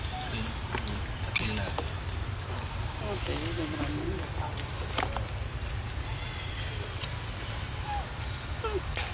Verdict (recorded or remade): recorded